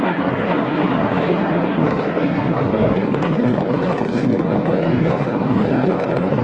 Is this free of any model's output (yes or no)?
no